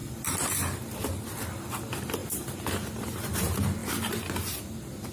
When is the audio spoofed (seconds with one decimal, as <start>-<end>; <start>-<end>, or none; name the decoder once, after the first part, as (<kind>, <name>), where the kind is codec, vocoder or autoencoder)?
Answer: 0.0-1.2 (vocoder, BigVGAN v2)